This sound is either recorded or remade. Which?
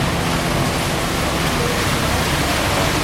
recorded